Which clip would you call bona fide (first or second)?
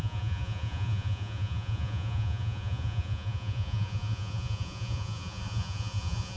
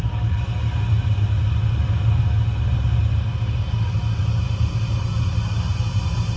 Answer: second